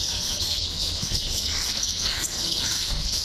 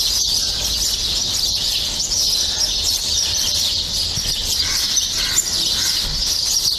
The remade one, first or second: first